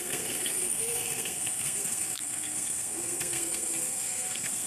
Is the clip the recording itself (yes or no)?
no